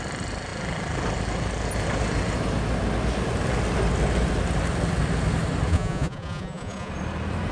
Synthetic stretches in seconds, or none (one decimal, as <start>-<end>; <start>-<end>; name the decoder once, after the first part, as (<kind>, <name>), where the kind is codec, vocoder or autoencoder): 5.7-6.9 (vocoder, Vocos)